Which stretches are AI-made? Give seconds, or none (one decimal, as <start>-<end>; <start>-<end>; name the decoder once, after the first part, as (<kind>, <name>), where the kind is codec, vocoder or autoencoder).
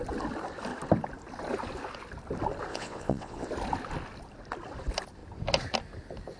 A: 2.7-3.5 (vocoder, WaveNeXt)